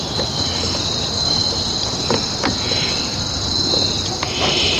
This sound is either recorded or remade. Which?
recorded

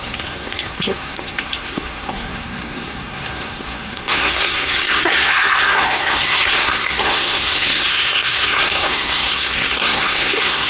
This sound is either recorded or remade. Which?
remade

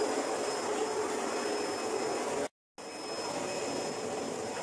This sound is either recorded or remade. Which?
recorded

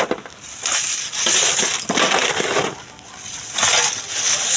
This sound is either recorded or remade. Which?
recorded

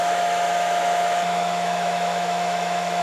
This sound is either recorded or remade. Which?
remade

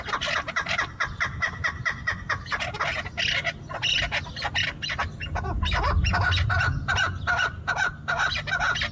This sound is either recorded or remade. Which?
recorded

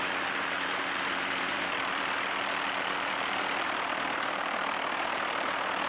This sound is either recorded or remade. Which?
remade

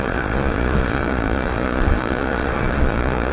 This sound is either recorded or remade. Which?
remade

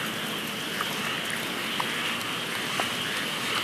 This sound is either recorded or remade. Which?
recorded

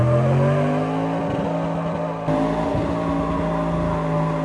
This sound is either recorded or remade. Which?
recorded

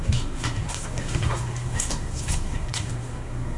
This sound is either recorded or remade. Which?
remade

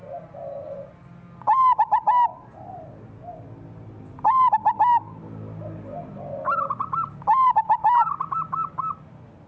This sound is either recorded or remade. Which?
recorded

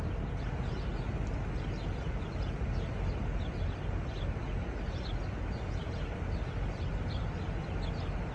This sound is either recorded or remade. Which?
recorded